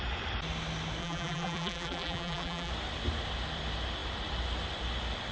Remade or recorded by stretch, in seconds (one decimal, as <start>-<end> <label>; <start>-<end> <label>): 0.0-1.0 recorded; 1.0-2.7 remade; 2.7-5.3 recorded